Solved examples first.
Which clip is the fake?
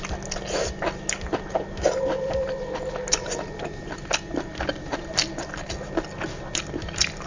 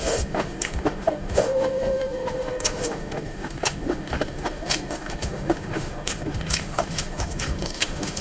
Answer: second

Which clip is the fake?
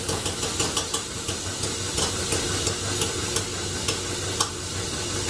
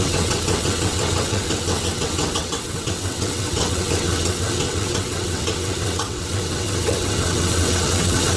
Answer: second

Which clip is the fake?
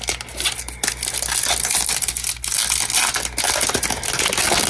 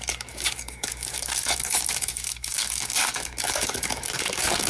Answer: second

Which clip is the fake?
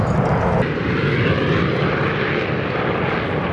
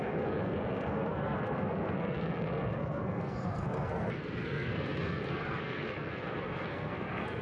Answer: second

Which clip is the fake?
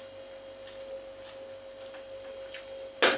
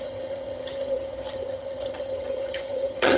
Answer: second